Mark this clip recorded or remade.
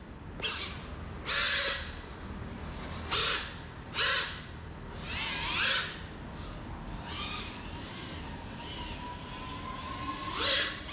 recorded